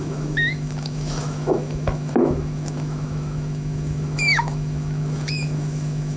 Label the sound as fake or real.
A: fake